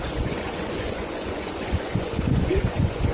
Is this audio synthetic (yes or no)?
yes